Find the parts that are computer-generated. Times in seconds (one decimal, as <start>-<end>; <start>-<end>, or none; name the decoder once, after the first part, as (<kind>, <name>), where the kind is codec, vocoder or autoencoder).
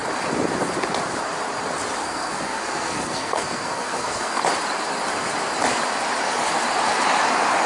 2.0-4.4 (codec, SNAC)